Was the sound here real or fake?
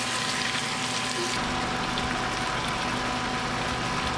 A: real